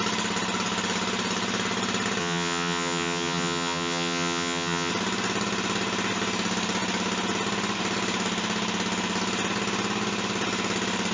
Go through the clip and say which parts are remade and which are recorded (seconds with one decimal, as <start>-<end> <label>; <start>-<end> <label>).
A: 0.0-2.2 recorded; 2.2-4.9 remade; 4.9-11.1 recorded